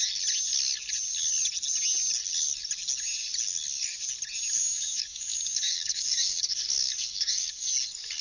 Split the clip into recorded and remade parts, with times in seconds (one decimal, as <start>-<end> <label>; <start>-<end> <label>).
0.0-4.6 recorded; 4.6-7.7 remade; 7.7-8.2 recorded